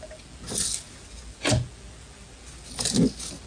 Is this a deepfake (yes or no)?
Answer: no